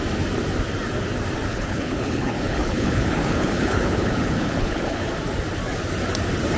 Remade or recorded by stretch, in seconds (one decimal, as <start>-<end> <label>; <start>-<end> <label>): 0.0-1.5 recorded; 1.5-5.1 remade; 5.1-6.6 recorded